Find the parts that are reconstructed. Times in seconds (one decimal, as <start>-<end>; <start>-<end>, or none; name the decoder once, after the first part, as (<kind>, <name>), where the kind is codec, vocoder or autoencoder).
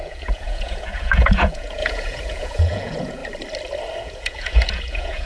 0.0-3.2 (vocoder, Vocos); 4.0-5.3